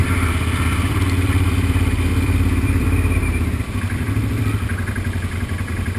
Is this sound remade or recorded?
remade